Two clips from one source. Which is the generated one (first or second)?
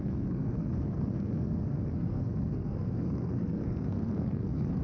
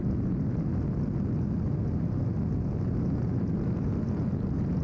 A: first